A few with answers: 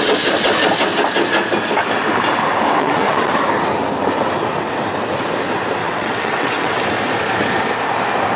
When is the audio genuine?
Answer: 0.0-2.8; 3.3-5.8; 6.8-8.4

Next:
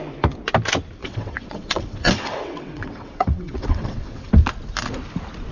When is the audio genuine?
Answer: 0.0-1.0; 4.3-5.5